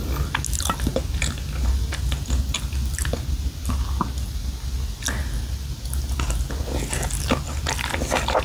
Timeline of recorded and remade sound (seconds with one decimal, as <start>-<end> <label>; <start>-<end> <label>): 0.0-8.4 recorded